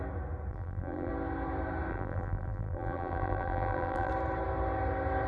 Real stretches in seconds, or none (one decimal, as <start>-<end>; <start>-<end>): 0.0-0.5; 1.1-1.9; 4.1-5.3